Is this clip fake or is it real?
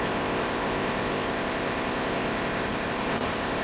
fake